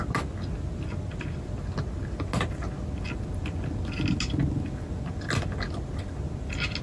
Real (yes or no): yes